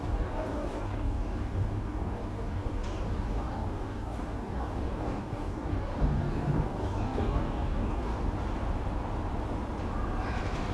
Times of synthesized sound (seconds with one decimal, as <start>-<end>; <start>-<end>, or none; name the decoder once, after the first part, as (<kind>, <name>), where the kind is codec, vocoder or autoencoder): 0.0-8.1 (codec, DAC)